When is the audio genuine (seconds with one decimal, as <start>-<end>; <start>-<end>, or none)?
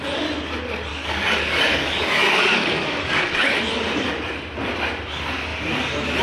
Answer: 0.0-0.9; 3.6-6.2